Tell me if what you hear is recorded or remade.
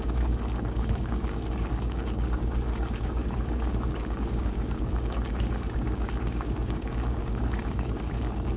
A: remade